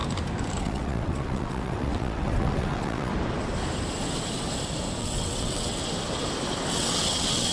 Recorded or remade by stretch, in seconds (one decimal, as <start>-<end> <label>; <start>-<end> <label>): 0.0-0.6 recorded; 0.6-3.1 remade; 3.1-5.0 recorded; 5.0-5.8 remade; 5.8-6.7 recorded; 6.7-7.5 remade